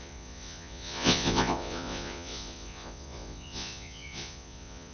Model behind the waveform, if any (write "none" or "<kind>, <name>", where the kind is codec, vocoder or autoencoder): vocoder, Vocos